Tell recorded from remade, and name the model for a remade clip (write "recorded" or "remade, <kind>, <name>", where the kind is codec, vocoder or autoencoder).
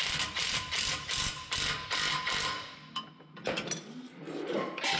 recorded